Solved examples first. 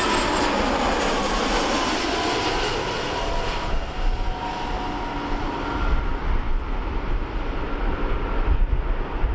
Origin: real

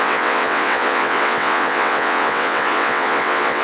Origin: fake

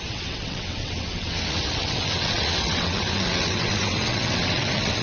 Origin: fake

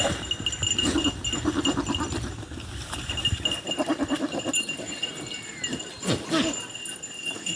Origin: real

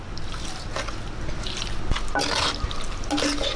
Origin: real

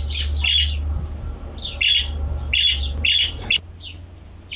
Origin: real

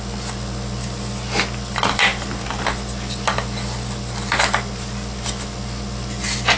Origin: real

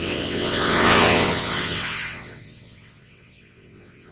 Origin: fake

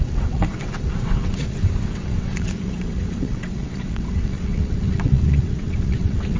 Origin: fake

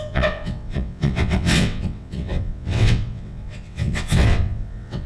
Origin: fake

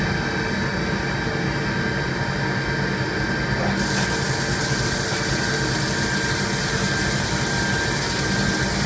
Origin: real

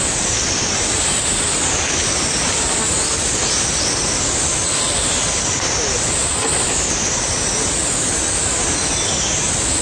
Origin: real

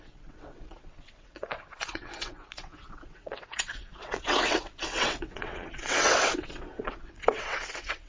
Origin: fake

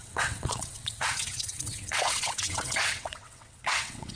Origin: fake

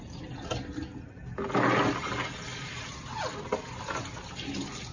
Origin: real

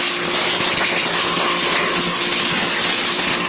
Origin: real